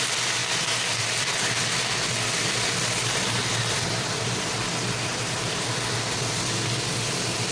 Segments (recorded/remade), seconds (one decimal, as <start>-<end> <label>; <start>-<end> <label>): 0.0-0.4 recorded; 0.4-1.0 remade; 1.0-7.5 recorded